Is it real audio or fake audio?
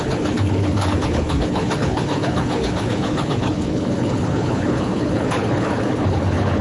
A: fake